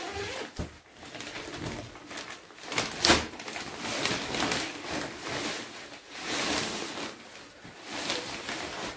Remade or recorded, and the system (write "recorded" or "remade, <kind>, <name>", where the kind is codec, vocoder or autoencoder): recorded